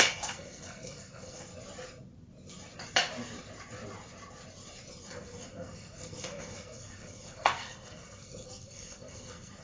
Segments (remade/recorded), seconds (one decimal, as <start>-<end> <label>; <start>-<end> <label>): 0.0-1.5 remade; 1.5-5.1 recorded; 5.1-9.6 remade

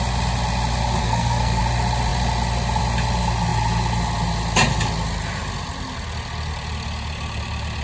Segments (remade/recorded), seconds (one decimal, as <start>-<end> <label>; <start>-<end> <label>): 0.0-1.0 recorded; 1.0-1.6 remade; 1.6-7.8 recorded

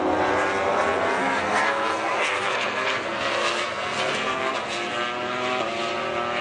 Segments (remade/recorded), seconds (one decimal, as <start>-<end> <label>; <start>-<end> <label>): 0.0-1.2 recorded; 1.2-4.5 remade; 4.5-6.4 recorded

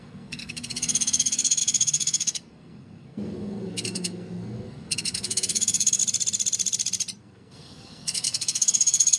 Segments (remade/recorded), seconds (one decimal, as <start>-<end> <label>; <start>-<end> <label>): 0.0-6.0 remade; 6.0-7.2 recorded; 7.2-9.2 remade

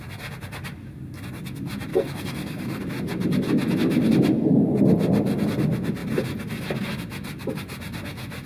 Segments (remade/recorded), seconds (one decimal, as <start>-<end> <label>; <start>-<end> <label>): 0.0-1.9 recorded; 1.9-2.8 remade; 2.8-8.5 recorded

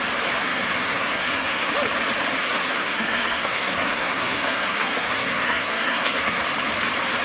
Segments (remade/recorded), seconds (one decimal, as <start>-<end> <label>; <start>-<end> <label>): 0.0-0.4 recorded; 0.4-1.7 remade; 1.7-2.4 recorded; 2.4-6.4 remade; 6.4-7.2 recorded